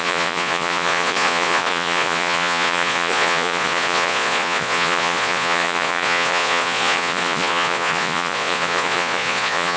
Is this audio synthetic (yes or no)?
yes